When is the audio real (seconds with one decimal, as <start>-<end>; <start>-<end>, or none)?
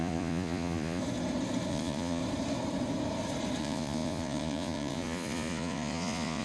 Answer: 1.0-1.7; 2.2-3.6